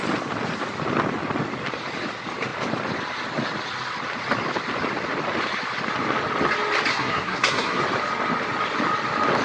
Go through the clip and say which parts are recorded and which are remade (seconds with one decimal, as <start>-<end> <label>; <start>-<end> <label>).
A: 0.0-6.9 recorded; 6.9-7.8 remade; 7.8-9.4 recorded